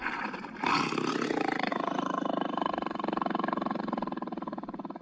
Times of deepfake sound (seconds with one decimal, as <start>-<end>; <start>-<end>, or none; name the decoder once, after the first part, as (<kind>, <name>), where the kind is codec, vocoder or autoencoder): none